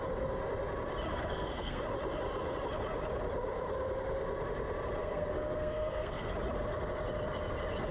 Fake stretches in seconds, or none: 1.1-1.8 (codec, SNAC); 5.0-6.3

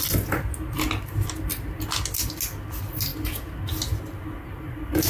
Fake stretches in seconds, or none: none

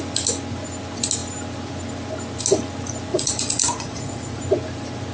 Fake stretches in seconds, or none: 3.1-4.4 (vocoder, Vocos)

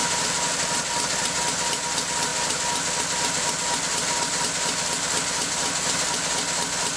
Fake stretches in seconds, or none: none

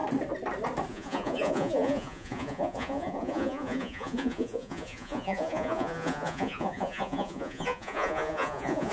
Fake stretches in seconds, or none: 0.9-8.9 (vocoder, Vocos)

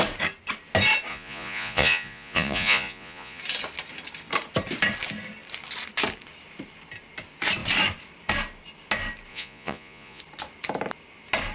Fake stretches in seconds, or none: 1.1-3.4 (vocoder, Vocos); 9.3-10.2